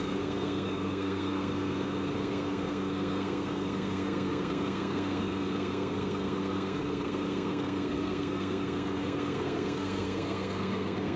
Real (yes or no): no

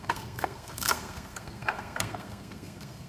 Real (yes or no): no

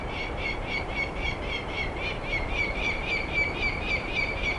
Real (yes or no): no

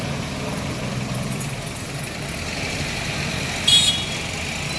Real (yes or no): yes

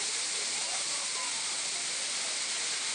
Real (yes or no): yes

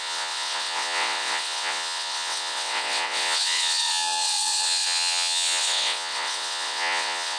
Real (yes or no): no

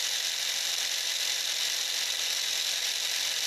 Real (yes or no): yes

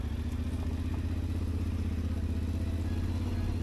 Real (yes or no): yes